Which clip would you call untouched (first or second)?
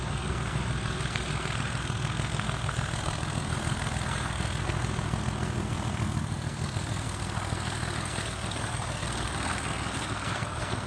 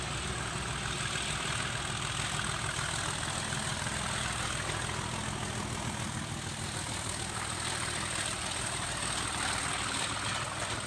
second